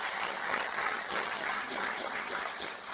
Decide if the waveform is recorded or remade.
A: remade